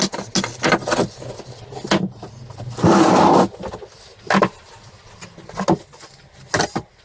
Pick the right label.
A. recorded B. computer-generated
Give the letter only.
A